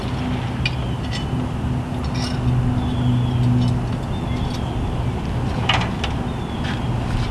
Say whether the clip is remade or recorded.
recorded